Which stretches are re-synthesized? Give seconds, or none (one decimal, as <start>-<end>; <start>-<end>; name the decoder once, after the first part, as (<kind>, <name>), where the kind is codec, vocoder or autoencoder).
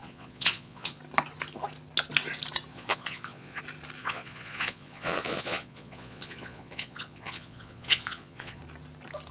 0.0-1.0 (vocoder, Vocos); 2.7-3.6; 4.0-8.6